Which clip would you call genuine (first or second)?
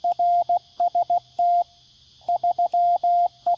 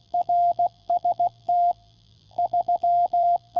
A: first